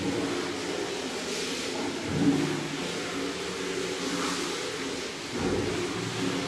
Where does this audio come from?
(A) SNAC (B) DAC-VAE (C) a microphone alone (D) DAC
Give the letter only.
C